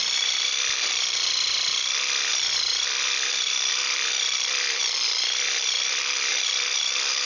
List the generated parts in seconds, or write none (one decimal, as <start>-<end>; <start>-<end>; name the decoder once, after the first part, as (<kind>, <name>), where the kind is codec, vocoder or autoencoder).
0.0-7.3 (vocoder, BigVGAN v2)